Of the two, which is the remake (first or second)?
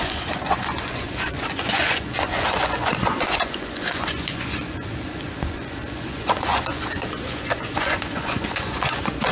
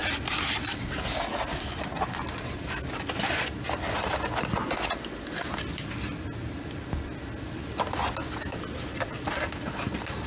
first